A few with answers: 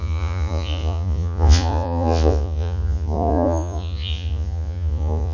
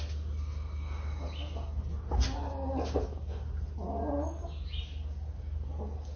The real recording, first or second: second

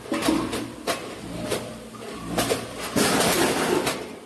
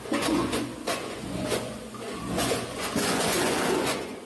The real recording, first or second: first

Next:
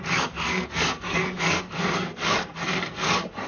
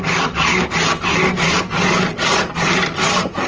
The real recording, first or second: second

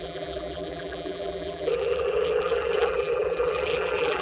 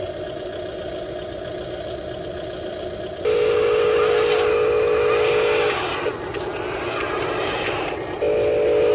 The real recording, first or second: second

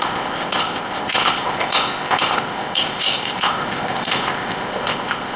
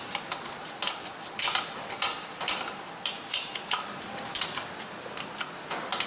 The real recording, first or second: second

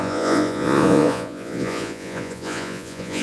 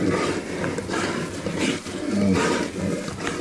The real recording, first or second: second